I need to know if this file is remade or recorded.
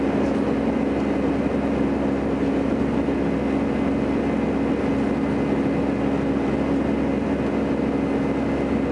recorded